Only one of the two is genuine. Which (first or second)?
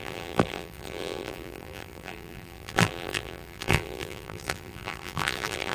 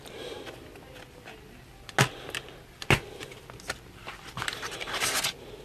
second